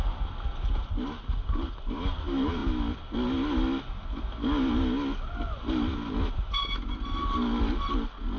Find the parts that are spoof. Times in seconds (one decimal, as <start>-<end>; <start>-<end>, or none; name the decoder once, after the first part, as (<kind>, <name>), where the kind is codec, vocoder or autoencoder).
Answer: none